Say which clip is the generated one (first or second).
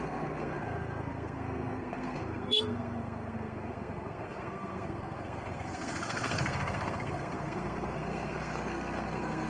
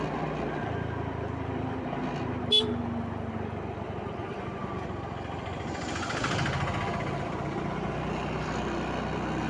first